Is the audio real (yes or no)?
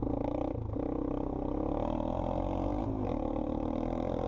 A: yes